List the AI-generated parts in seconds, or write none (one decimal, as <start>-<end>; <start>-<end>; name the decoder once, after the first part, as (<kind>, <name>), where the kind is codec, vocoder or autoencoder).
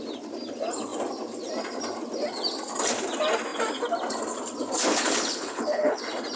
4.9-6.0 (codec, HILCodec)